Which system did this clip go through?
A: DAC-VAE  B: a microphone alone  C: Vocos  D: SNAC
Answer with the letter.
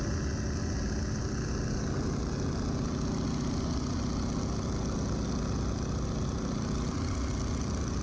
B